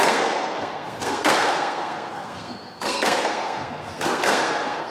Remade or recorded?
remade